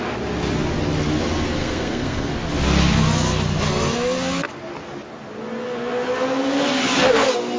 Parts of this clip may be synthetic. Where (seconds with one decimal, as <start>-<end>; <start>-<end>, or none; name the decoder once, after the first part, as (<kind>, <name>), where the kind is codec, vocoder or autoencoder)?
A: 1.6-2.3 (codec, SNAC)